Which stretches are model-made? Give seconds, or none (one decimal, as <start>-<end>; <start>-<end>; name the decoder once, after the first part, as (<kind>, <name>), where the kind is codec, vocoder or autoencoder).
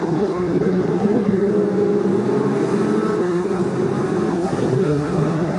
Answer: 0.0-1.5 (codec, SNAC); 3.2-3.6; 4.3-5.6